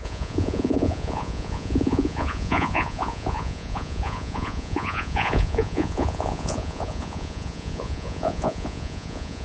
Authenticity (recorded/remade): remade